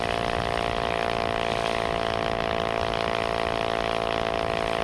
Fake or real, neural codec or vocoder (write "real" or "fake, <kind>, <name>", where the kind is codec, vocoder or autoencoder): real